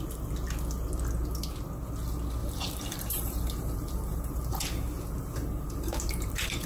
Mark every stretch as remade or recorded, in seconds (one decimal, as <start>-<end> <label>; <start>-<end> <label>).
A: 0.0-2.4 recorded; 2.4-6.7 remade

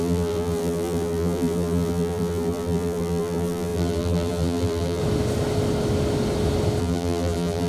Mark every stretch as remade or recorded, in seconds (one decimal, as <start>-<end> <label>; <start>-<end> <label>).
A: 0.0-5.0 remade; 5.0-6.8 recorded; 6.8-7.7 remade

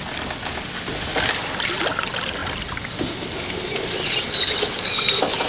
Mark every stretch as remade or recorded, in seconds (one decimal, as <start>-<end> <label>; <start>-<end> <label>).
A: 0.0-5.5 recorded